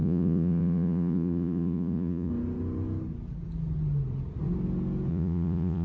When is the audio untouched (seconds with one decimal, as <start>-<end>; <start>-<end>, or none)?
2.3-5.1